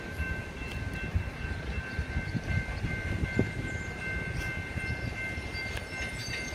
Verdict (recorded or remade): recorded